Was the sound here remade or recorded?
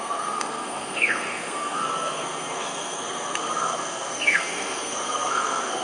remade